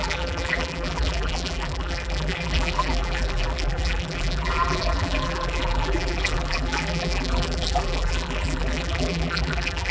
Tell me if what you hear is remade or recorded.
remade